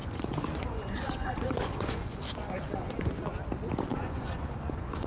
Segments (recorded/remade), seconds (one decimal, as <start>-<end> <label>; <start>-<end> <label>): 0.0-3.1 remade; 3.1-3.9 recorded; 3.9-5.1 remade